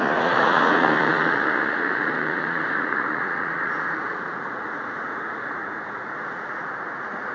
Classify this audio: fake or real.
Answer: fake